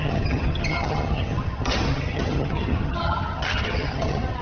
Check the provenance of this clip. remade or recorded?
remade